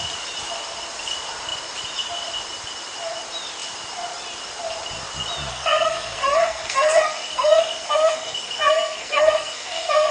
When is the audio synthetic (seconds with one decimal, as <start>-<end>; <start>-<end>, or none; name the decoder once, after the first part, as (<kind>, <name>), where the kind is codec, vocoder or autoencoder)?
5.5-10.1 (codec, SNAC)